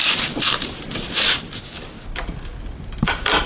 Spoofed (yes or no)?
no